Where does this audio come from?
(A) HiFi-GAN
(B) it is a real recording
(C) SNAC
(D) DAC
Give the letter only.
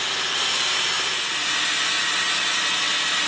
B